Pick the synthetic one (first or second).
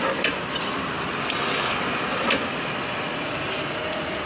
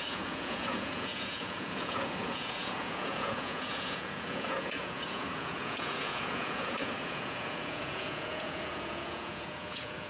second